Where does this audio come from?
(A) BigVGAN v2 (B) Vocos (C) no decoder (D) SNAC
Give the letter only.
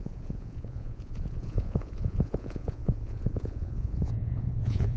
B